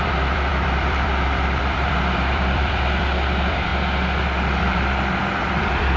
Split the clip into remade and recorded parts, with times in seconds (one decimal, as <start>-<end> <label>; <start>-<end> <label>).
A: 0.0-3.7 remade; 3.7-4.6 recorded; 4.6-6.0 remade